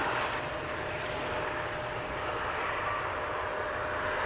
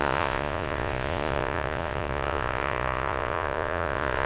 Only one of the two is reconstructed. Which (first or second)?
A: second